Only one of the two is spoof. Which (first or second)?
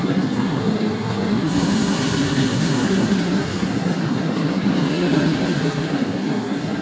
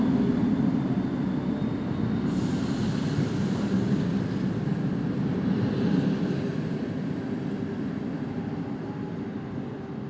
first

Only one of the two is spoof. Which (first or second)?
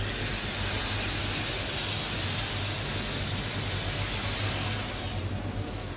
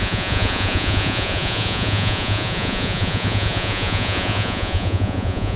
second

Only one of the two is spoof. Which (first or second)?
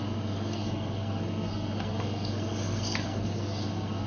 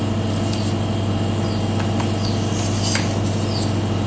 first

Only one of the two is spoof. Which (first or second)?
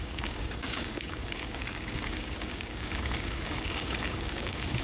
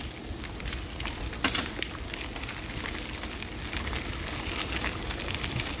first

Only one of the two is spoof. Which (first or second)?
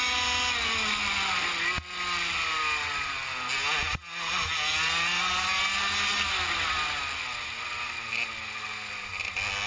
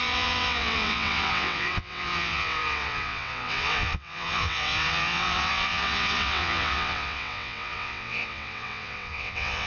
second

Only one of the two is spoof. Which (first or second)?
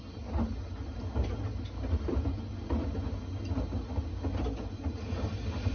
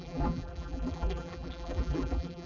second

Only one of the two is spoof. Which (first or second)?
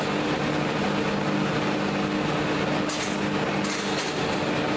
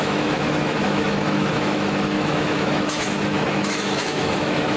second